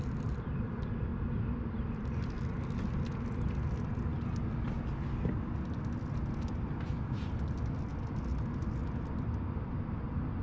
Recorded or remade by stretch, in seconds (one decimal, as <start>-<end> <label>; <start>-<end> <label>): 0.0-10.4 recorded